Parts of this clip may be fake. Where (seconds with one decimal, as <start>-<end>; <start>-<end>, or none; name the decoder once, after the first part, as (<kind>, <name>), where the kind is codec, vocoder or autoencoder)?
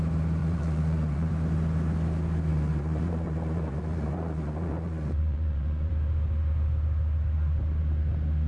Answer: 0.4-1.3 (vocoder, Vocos); 2.5-5.9